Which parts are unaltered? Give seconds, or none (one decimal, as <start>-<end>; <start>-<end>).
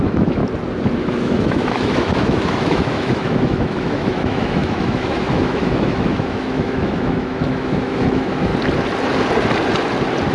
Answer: 0.4-1.0; 8.5-10.3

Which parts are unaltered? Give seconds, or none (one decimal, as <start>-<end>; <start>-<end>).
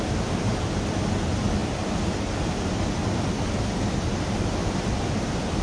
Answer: 0.0-5.6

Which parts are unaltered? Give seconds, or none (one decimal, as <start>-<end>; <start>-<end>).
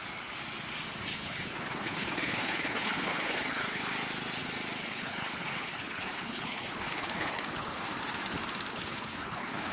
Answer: 0.0-1.1; 3.8-4.8; 7.8-8.7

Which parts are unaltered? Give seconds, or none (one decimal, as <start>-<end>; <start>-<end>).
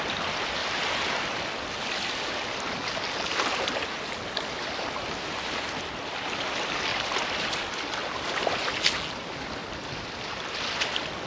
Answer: 0.0-0.6; 2.3-6.9; 7.6-8.0; 8.6-9.6; 10.8-11.3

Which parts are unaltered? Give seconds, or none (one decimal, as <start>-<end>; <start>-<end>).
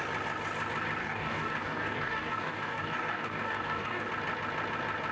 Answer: 0.0-1.0; 4.1-5.1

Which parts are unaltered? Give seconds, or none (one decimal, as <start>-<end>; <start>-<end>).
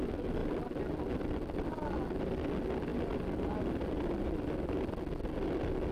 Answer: 0.0-5.9